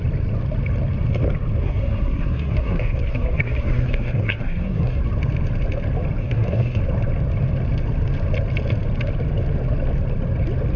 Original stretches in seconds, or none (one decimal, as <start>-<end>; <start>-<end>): 0.0-1.6; 5.0-6.2; 6.8-10.8